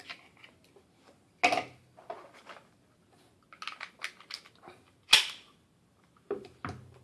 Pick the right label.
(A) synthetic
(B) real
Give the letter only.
B